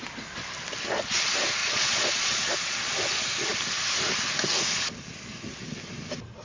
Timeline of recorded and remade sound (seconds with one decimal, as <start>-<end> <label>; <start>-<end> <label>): 0.0-1.6 recorded; 1.6-2.9 remade; 2.9-6.4 recorded